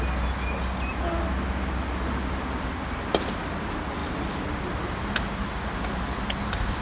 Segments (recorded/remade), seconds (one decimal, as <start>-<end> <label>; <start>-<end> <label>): 0.0-6.8 recorded

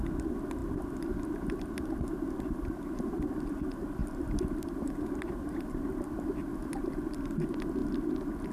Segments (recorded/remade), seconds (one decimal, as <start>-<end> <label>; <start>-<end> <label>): 0.0-8.5 recorded